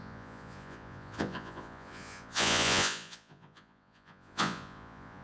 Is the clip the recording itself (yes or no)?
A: no